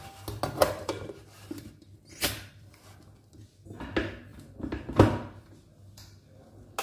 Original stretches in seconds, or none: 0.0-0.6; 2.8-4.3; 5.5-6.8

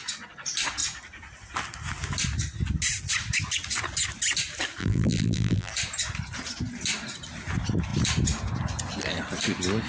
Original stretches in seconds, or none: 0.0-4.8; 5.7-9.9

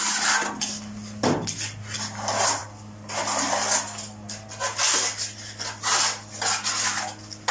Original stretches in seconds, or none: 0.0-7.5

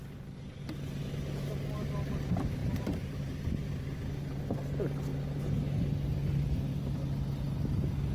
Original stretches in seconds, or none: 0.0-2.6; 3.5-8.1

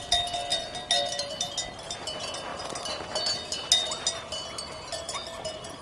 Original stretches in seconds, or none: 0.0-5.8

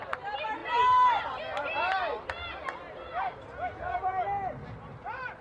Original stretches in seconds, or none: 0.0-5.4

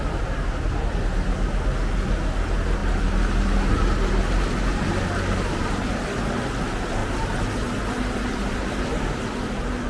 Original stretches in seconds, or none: 0.0-9.9